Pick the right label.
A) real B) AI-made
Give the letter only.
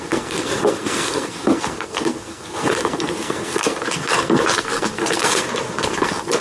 B